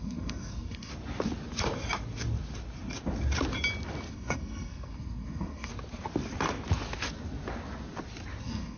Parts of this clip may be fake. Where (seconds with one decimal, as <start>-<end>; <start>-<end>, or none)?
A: 0.0-0.9; 4.1-5.7; 8.4-8.8